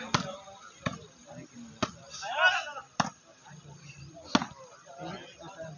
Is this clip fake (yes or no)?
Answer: no